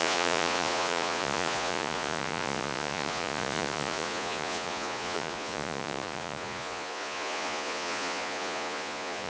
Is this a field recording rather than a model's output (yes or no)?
no